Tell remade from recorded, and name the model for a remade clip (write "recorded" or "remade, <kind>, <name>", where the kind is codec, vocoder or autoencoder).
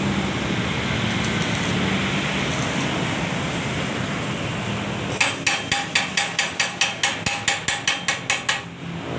recorded